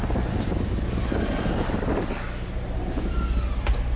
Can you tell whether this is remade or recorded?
recorded